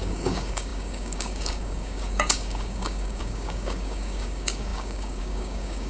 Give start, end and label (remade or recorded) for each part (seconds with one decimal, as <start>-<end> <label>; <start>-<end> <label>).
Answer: 0.0-5.9 remade